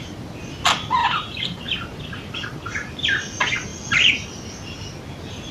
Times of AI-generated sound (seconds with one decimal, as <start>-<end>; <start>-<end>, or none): 1.0-1.6